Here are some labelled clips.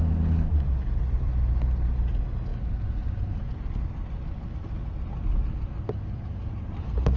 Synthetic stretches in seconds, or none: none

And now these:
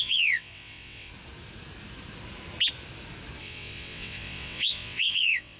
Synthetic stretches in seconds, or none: 0.0-1.1 (vocoder, WaveNeXt); 3.4-5.6

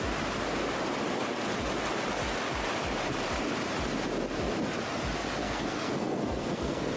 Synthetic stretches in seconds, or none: 5.4-7.0 (codec, SNAC)

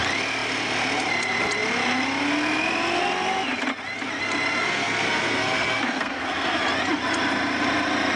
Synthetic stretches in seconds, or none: 4.6-6.6 (codec, SNAC)

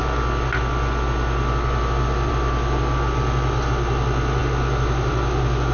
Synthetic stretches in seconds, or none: none

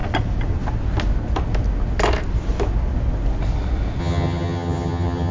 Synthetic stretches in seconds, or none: 4.0-5.3 (vocoder, HiFi-GAN)

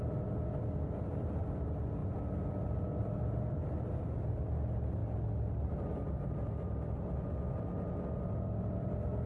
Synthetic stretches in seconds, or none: none